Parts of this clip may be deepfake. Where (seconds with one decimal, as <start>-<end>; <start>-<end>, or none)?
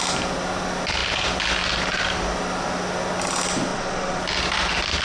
3.7-4.2